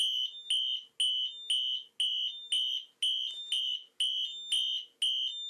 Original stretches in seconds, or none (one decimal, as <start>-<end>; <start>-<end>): 0.0-5.5